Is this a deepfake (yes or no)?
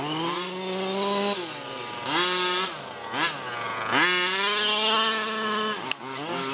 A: no